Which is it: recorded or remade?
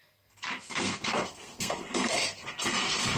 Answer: remade